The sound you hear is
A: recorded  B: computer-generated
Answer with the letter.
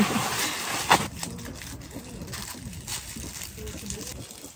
A